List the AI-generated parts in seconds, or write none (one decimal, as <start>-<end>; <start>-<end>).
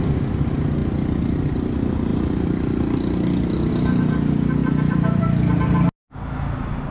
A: 2.1-3.7; 4.6-5.2